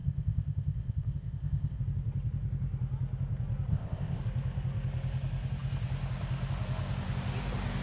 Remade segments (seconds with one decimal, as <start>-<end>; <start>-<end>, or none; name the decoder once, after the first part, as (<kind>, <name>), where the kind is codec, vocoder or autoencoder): 0.0-1.8 (codec, ZipCodec); 3.7-4.2